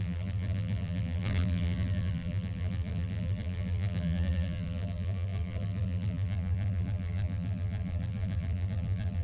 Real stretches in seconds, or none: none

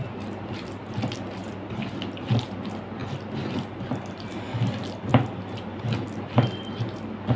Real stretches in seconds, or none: 0.0-5.1; 5.8-7.4

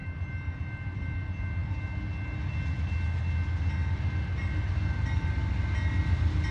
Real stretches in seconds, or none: 0.0-6.5

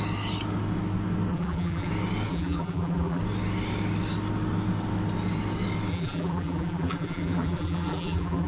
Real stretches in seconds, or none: 0.0-1.3; 1.9-2.3; 3.2-5.9

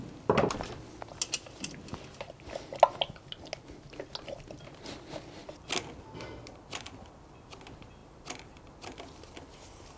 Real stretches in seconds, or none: 0.0-8.0

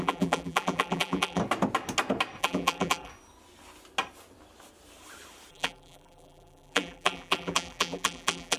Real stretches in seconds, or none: 1.4-2.4; 3.1-5.5

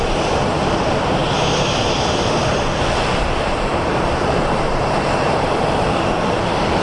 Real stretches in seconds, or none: 1.2-2.2

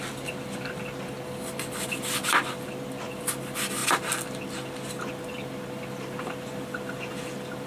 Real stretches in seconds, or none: 0.0-7.7